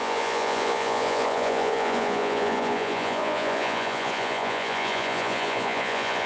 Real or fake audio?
fake